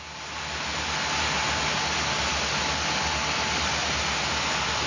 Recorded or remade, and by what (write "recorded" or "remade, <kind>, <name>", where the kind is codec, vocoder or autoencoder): recorded